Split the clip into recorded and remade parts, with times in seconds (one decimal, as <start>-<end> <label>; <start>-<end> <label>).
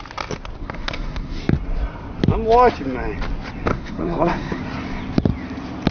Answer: 0.0-0.6 recorded; 0.6-1.4 remade; 1.4-3.7 recorded; 3.7-4.6 remade; 4.6-5.9 recorded